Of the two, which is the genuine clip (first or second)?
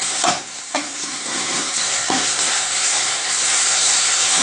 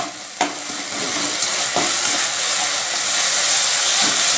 second